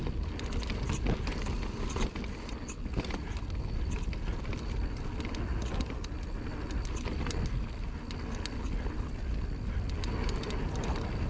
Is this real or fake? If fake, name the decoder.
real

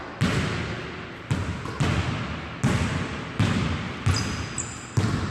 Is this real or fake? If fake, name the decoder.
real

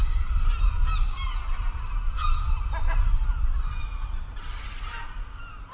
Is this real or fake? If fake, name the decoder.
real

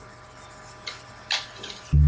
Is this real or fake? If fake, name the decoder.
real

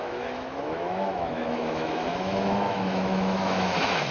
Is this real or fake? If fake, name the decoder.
fake, autoencoder, DAC-VAE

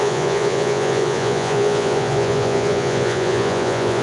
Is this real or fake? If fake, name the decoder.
fake, vocoder, Vocos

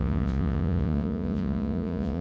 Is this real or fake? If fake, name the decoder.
fake, vocoder, Vocos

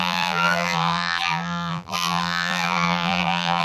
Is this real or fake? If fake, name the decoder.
fake, vocoder, BigVGAN v2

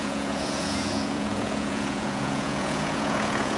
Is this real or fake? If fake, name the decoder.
fake, vocoder, Vocos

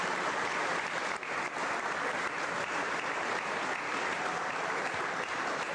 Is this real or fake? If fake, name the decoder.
real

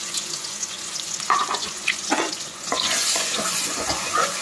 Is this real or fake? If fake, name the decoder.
fake, vocoder, Vocos